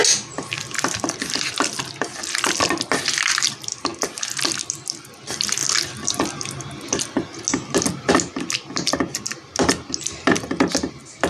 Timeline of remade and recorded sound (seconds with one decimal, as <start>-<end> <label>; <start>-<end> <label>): 0.0-11.3 recorded